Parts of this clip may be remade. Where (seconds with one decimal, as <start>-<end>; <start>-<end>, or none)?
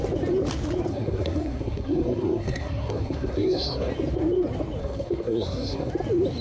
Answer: 0.9-3.9; 4.8-5.9